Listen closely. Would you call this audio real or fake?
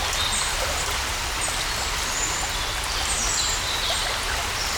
real